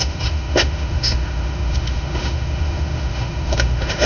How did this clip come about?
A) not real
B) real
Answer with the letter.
A